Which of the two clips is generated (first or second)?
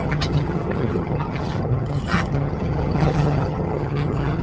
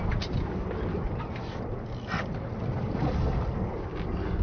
first